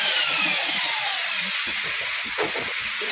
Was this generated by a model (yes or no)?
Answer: yes